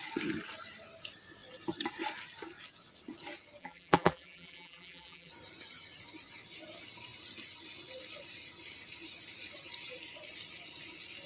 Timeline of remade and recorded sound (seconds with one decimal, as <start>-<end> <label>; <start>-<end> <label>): 0.0-3.6 recorded; 3.6-5.3 remade; 5.3-11.3 recorded